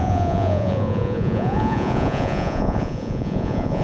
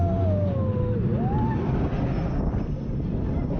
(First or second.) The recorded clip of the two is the second